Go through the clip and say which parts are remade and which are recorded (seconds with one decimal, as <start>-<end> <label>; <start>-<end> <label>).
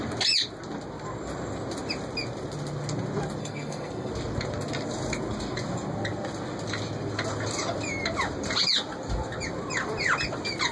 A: 0.0-3.4 recorded; 3.4-4.1 remade; 4.1-10.7 recorded